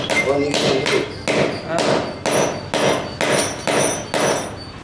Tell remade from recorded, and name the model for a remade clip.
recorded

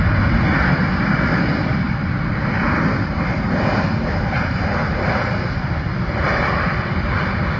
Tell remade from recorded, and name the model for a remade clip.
recorded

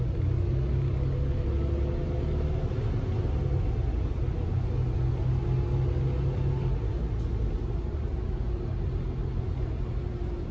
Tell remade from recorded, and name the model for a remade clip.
recorded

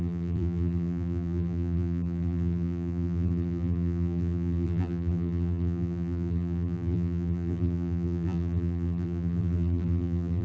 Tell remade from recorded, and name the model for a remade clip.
remade, vocoder, BigVGAN v2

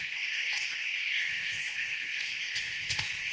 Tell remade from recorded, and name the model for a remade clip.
remade, codec, ZipCodec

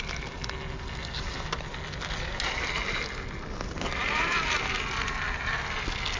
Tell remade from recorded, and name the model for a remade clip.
recorded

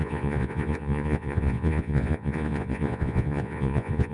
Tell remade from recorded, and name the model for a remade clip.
remade, vocoder, Vocos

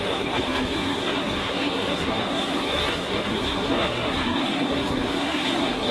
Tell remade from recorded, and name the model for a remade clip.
remade, codec, SNAC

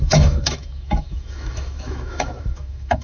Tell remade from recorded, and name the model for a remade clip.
remade, autoencoder, DAC-VAE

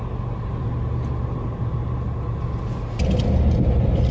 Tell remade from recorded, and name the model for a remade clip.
recorded